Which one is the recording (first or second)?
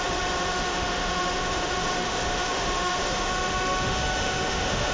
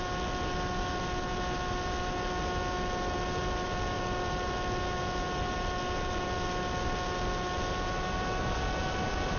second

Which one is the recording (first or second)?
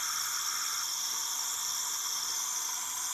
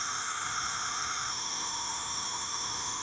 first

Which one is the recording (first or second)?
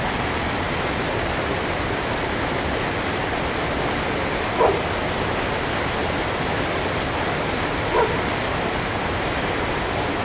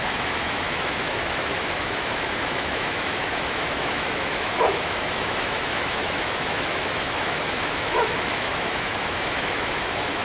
first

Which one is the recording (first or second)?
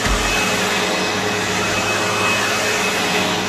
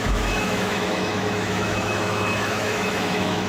first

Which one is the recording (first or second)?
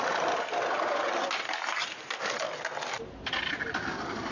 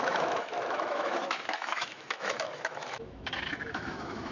first